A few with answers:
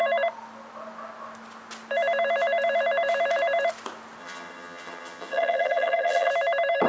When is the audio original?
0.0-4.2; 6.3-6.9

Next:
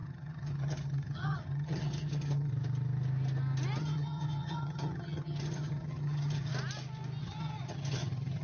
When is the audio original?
2.5-3.8; 6.5-7.2

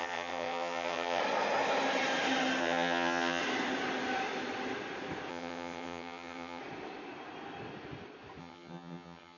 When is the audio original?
1.2-2.6; 3.4-5.3; 6.6-8.4

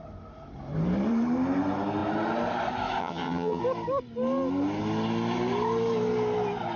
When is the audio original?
0.0-3.0; 3.6-6.8

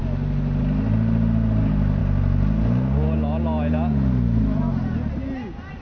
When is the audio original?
0.0-5.8

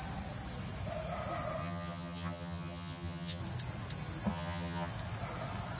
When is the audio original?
0.0-1.6; 3.4-4.3; 4.9-5.8